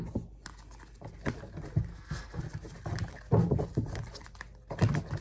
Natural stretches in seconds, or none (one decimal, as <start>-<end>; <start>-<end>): 0.0-1.9; 2.4-5.2

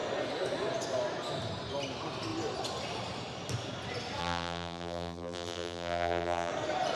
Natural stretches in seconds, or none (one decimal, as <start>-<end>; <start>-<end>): 0.0-4.2; 6.5-7.0

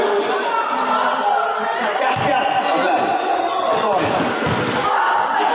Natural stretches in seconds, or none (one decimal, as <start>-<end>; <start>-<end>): 0.0-5.5

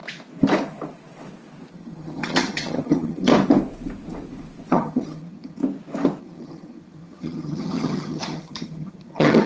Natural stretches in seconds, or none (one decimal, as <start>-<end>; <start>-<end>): 0.0-1.7; 3.3-4.7; 5.6-6.2

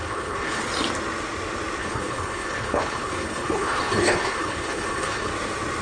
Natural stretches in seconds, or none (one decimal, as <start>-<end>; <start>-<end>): 0.6-1.8; 5.3-5.8